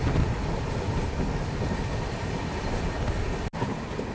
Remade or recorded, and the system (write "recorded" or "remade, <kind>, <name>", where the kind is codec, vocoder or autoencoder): recorded